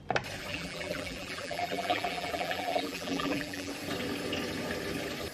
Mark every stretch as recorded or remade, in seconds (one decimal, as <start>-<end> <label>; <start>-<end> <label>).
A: 0.0-0.5 recorded; 0.5-3.7 remade; 3.7-5.3 recorded